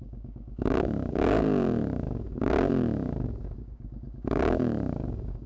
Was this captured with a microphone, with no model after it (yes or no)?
no